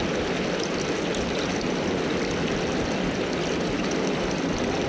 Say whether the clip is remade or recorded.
recorded